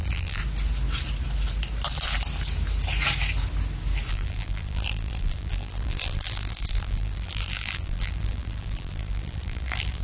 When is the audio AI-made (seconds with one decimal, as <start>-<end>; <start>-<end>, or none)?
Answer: 0.0-0.4; 4.1-10.0